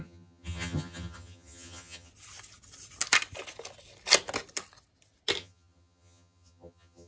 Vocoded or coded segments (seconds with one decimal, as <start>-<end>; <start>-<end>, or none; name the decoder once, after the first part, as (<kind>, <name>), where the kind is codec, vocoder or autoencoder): 0.0-2.1 (vocoder, HiFi-GAN); 5.4-7.1